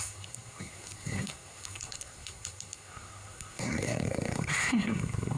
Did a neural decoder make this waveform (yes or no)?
yes